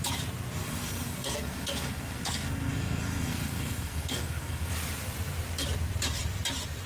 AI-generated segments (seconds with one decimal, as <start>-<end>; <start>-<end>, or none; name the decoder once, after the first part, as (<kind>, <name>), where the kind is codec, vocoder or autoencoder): 0.6-4.7 (codec, SNAC)